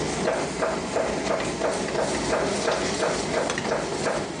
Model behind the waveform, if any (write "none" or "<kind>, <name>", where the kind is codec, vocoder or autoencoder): none